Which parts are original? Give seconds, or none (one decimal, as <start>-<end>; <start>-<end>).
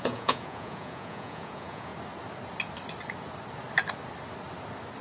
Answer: 1.9-5.0